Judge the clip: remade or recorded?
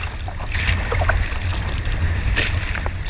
recorded